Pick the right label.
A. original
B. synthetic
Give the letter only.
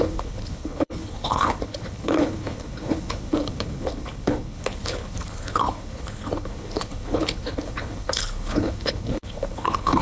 B